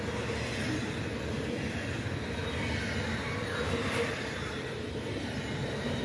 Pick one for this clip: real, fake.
real